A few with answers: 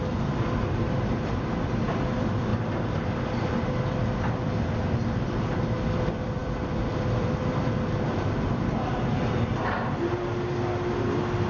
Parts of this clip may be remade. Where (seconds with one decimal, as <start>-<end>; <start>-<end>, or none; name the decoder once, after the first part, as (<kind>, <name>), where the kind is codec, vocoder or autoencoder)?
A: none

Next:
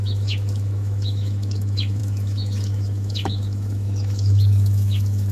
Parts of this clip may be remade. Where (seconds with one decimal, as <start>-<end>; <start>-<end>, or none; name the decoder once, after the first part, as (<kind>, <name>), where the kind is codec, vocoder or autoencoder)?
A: 0.0-5.3 (autoencoder, DAC-VAE)

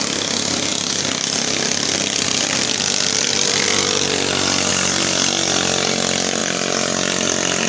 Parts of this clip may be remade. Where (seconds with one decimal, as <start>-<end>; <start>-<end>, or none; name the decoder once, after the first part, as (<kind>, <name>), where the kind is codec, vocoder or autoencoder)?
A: none